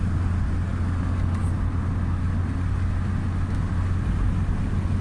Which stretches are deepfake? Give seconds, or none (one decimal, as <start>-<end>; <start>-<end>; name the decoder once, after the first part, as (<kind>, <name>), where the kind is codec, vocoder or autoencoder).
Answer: none